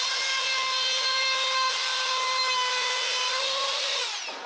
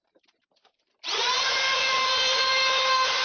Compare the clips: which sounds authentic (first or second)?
first